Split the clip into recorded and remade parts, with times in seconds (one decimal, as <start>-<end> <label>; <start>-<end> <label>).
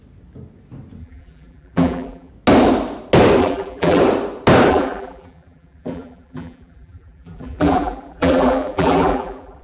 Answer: 0.0-1.0 recorded; 1.0-2.3 remade; 2.3-3.4 recorded; 3.4-4.0 remade; 4.0-4.7 recorded; 4.7-9.6 remade